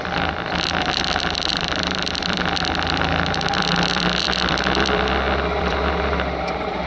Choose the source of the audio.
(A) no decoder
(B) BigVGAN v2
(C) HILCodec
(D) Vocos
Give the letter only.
B